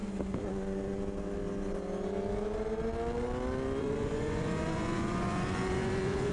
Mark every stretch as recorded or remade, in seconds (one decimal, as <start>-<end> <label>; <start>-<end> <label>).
0.0-3.8 recorded; 3.8-6.3 remade